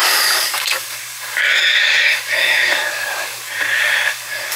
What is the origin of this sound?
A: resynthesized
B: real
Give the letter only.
A